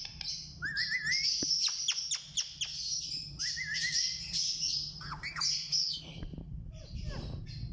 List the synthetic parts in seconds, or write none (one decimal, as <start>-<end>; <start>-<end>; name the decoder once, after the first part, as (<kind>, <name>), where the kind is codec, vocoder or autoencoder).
6.3-7.0 (vocoder, BigVGAN v2)